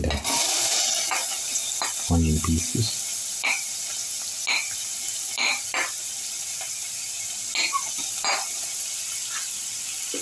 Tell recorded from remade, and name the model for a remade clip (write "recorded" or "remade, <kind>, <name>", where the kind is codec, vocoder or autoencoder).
recorded